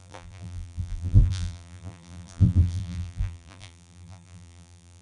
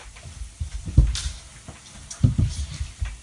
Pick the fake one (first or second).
first